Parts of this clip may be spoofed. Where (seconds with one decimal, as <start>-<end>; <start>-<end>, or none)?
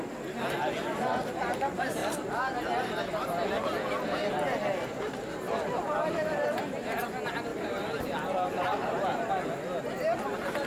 7.5-9.3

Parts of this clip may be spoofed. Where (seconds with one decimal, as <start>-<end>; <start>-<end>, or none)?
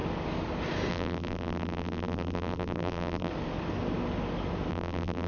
0.9-3.3; 4.7-5.3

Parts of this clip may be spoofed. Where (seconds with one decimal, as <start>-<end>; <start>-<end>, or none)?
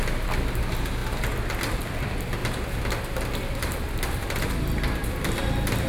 0.0-1.0; 1.6-2.4; 3.0-5.9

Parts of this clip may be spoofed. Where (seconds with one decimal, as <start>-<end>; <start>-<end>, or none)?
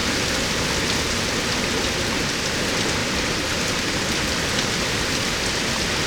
3.0-5.6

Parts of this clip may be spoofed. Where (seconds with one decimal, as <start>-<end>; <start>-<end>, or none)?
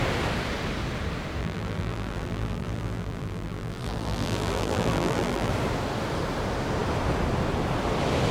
1.4-5.5